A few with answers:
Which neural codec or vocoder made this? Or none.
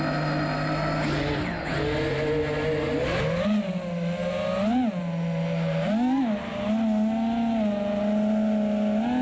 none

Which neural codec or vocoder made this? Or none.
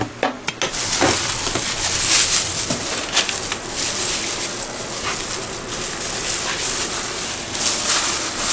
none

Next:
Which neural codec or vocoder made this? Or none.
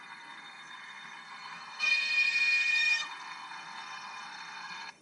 codec, SNAC